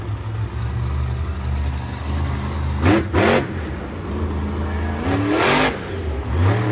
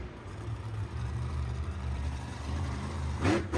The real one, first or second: first